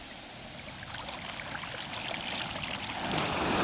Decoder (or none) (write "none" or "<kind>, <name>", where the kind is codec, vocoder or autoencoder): none